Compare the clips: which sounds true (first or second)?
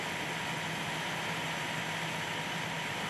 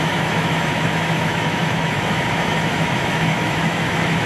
first